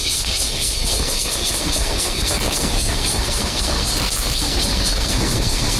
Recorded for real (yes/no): no